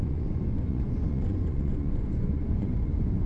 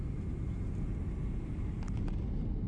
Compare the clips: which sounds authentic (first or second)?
second